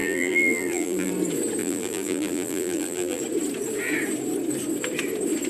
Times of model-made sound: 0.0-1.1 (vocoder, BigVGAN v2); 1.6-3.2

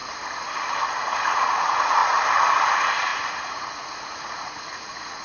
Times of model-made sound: 1.0-2.0 (vocoder, Vocos); 2.7-5.2

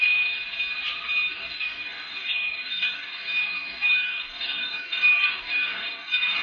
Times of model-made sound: 0.0-0.4 (codec, DAC); 1.3-6.4

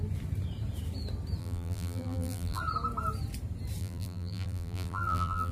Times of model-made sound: 1.4-2.6 (vocoder, BigVGAN v2); 3.8-5.5

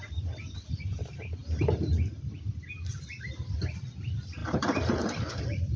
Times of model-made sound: 4.4-5.8 (vocoder, BigVGAN v2)

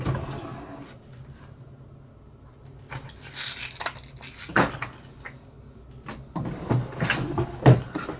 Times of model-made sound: none